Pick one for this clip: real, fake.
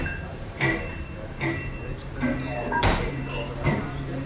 fake